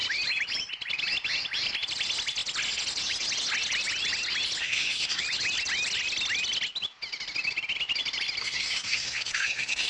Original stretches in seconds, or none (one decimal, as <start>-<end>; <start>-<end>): 0.0-4.6; 5.2-8.4